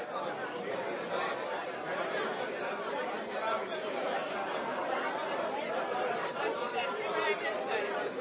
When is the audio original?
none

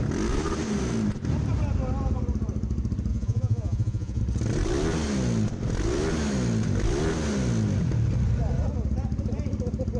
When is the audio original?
0.0-3.1; 4.2-10.0